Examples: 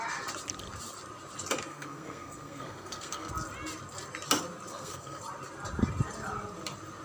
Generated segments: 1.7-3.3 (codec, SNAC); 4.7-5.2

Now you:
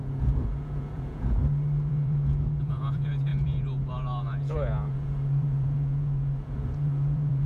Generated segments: 0.0-1.4 (vocoder, Vocos); 1.9-7.5